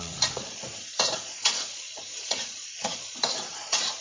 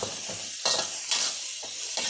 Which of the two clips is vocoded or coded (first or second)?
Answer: first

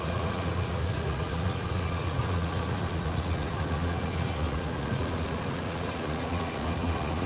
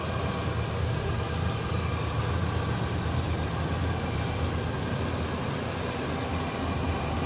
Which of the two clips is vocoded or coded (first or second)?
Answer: first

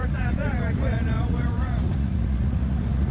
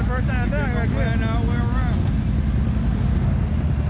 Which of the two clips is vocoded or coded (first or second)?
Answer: first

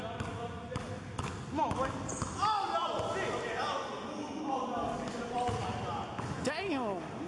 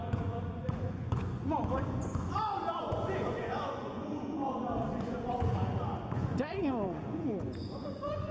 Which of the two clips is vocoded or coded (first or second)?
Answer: second